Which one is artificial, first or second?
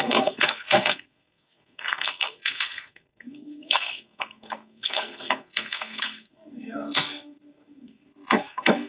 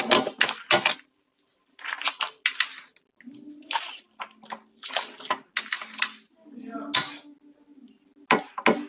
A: first